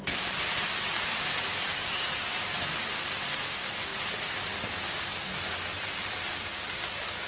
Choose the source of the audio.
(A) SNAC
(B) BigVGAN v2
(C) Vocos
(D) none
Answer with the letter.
D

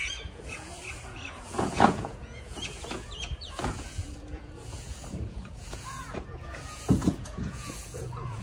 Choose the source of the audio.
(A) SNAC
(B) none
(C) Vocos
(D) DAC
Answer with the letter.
C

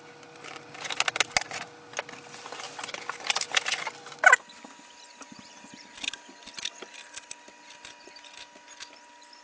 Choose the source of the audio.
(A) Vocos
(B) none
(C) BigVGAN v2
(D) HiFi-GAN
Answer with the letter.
B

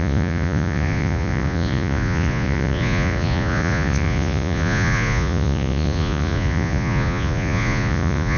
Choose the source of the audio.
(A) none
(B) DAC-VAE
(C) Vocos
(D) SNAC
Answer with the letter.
C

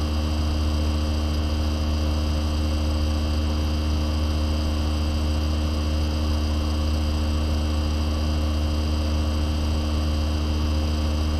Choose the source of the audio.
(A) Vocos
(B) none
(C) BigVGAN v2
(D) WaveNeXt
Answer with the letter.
B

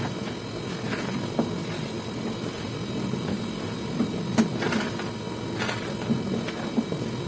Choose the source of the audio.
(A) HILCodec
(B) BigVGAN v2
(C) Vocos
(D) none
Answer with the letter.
D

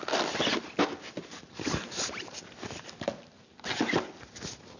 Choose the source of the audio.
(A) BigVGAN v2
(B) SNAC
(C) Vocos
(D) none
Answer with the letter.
D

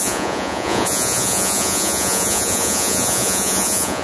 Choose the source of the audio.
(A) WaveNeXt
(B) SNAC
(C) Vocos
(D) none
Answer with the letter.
C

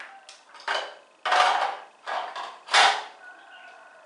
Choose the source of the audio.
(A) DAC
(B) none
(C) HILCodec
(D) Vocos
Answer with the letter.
B